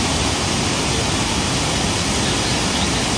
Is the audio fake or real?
real